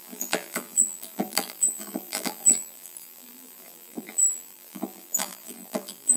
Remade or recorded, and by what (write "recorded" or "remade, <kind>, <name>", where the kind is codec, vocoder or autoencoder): remade, vocoder, BigVGAN v2